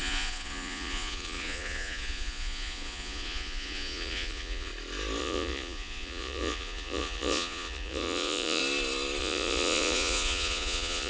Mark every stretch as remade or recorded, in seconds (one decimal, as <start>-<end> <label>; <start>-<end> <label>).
0.0-4.7 remade; 4.7-5.2 recorded; 5.2-8.6 remade; 8.6-9.2 recorded; 9.2-11.1 remade